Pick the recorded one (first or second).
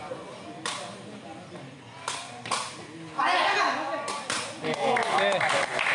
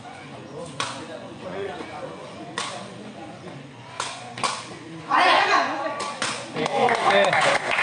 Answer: first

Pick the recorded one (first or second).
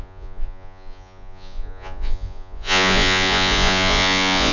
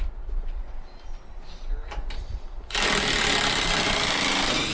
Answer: second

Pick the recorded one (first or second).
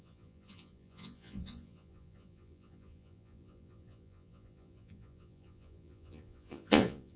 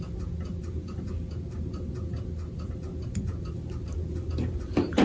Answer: second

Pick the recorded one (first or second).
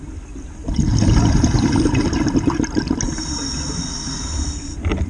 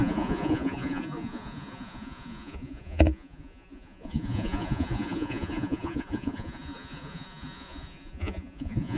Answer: first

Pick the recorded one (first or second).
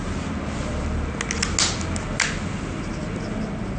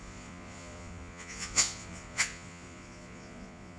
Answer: first